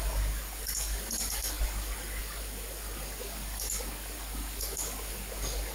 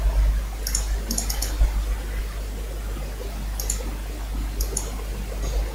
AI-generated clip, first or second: first